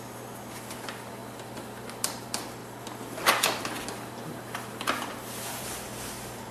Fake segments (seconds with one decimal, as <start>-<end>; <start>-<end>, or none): none